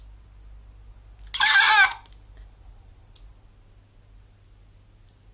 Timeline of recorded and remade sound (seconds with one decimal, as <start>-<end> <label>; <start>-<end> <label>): 0.0-5.3 recorded